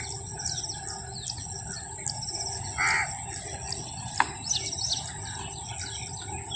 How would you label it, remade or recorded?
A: recorded